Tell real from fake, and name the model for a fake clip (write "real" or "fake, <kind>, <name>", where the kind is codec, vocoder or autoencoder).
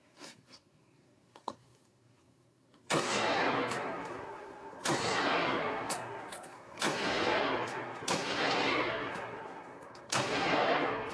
fake, codec, SNAC